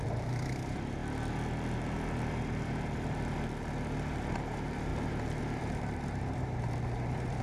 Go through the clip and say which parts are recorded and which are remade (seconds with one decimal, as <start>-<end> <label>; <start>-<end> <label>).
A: 0.0-1.0 remade; 1.0-4.2 recorded; 4.2-4.9 remade; 4.9-5.4 recorded; 5.4-7.4 remade